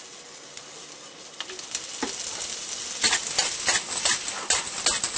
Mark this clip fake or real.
real